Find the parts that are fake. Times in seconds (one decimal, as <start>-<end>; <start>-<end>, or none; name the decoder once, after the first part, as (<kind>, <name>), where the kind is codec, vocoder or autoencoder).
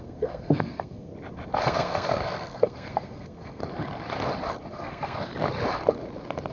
0.0-1.1 (codec, SNAC); 1.6-3.6; 4.7-5.3